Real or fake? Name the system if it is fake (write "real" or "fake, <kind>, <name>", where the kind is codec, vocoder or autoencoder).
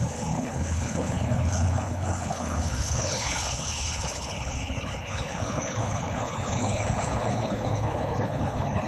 fake, codec, HILCodec